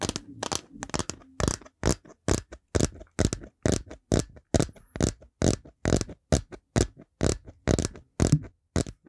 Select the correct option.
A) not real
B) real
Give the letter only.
B